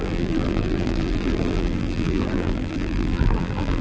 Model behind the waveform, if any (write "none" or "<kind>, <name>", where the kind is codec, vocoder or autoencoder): vocoder, BigVGAN v2